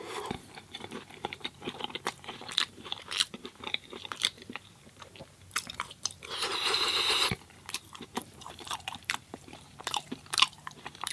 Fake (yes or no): yes